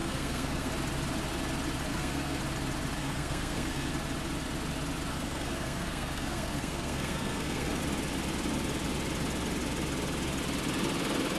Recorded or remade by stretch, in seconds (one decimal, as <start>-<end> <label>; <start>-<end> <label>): 0.0-0.7 remade; 0.7-1.9 recorded; 1.9-2.4 remade; 2.4-3.0 recorded; 3.0-3.9 remade; 3.9-5.1 recorded; 5.1-7.8 remade; 7.8-11.4 recorded